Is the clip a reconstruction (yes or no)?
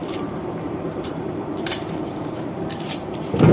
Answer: yes